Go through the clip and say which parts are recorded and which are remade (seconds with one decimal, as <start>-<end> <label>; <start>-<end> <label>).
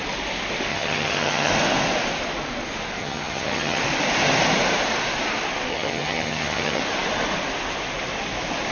0.0-0.7 recorded; 0.7-1.5 remade; 1.5-3.0 recorded; 3.0-3.8 remade; 3.8-5.7 recorded; 5.7-6.8 remade; 6.8-8.7 recorded